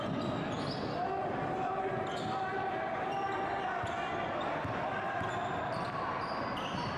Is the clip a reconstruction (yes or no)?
no